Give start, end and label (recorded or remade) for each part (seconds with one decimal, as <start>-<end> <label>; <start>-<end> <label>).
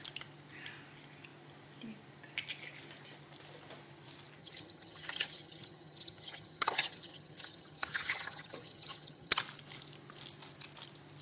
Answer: 0.0-4.4 recorded; 4.4-9.4 remade; 9.4-11.2 recorded